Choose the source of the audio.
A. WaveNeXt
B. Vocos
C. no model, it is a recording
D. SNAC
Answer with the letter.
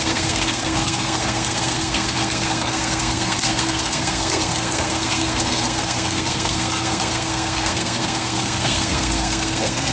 D